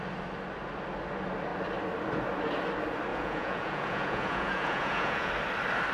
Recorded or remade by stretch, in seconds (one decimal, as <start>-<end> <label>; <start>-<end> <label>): 0.0-3.1 recorded; 3.1-5.3 remade; 5.3-5.9 recorded